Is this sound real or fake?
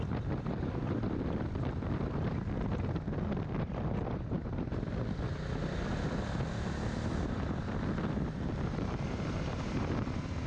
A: fake